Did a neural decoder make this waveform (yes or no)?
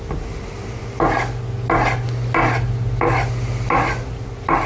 no